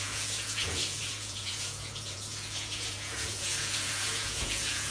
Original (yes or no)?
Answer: no